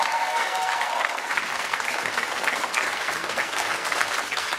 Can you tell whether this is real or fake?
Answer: fake